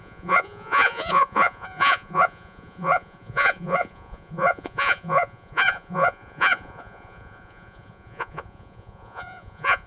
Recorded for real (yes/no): no